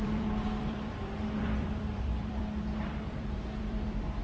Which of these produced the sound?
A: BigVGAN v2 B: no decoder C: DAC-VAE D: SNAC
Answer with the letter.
A